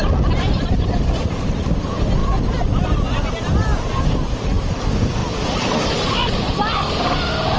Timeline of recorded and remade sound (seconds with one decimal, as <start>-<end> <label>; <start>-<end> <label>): 0.0-7.6 recorded

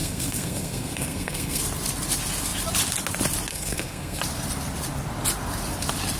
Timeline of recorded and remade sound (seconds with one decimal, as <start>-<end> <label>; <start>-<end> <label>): 0.0-1.6 remade; 1.6-3.5 recorded; 3.5-4.2 remade; 4.2-6.2 recorded